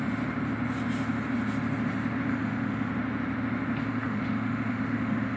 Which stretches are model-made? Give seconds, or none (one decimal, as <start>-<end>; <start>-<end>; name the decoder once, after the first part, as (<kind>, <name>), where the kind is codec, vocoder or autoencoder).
2.3-2.9 (autoencoder, DAC-VAE); 3.8-5.4